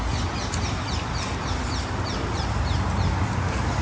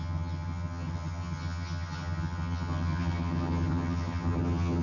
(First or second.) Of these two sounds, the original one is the first